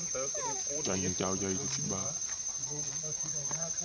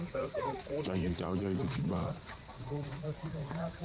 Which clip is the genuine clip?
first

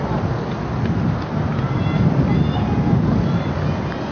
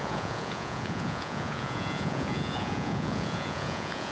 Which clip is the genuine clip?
first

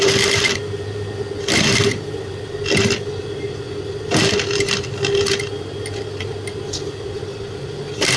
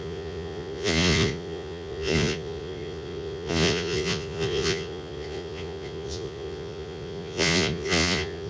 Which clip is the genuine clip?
first